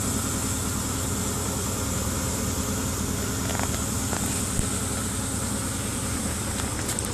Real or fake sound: real